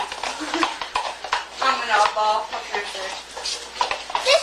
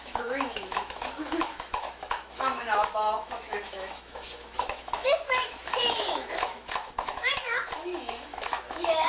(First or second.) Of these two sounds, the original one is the first